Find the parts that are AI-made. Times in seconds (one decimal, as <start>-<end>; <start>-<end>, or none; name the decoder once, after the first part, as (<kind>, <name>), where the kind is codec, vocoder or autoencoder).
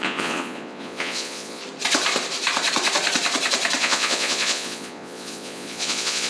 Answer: 0.0-1.6 (vocoder, Vocos); 3.8-6.3